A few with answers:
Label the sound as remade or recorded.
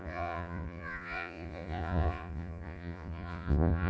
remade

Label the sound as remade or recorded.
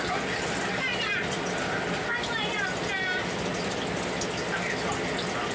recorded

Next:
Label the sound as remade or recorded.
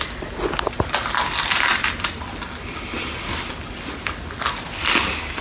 recorded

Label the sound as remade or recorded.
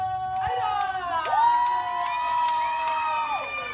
recorded